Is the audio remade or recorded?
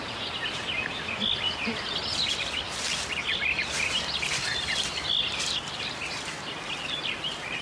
recorded